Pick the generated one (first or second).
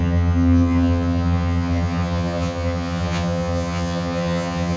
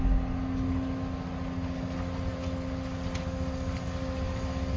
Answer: first